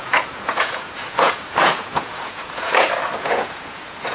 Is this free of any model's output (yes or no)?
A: no